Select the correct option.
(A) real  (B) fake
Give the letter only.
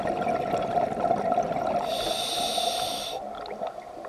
A